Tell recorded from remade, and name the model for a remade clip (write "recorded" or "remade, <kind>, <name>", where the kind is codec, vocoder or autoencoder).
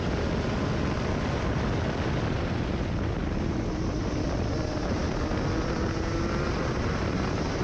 remade, vocoder, BigVGAN v2